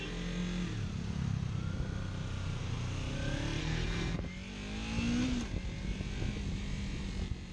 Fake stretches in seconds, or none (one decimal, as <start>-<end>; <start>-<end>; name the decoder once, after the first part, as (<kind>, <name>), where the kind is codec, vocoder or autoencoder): 3.6-4.2 (codec, SNAC)